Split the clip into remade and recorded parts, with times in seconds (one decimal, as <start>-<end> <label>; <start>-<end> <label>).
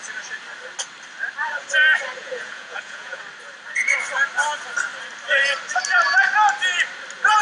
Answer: 0.0-2.2 recorded; 2.2-3.2 remade; 3.2-7.4 recorded